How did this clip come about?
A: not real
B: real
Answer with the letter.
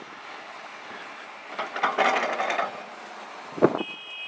B